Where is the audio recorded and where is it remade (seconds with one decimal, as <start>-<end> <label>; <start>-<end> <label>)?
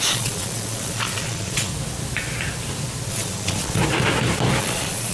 0.0-1.7 remade; 1.7-3.1 recorded; 3.1-3.8 remade; 3.8-4.6 recorded; 4.6-5.1 remade